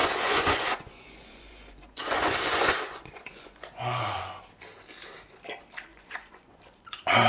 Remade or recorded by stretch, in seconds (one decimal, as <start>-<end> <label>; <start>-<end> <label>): 0.0-4.4 remade; 4.4-5.9 recorded; 5.9-7.3 remade